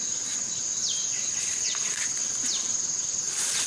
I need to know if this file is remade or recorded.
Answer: recorded